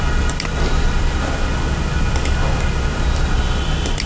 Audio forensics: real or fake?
real